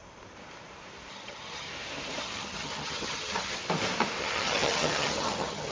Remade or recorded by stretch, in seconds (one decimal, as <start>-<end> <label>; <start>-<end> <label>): 0.0-1.1 recorded; 1.1-1.7 remade; 1.7-2.2 recorded; 2.2-3.6 remade; 3.6-4.2 recorded; 4.2-5.7 remade